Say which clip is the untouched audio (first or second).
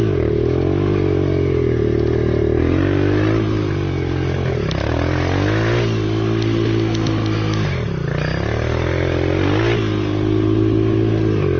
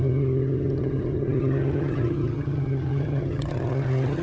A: first